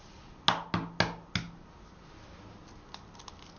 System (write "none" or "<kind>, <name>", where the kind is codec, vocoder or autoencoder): none